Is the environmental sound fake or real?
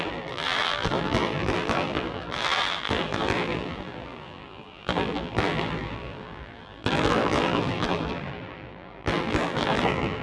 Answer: fake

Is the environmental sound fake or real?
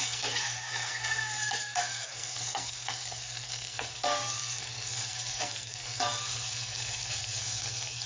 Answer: fake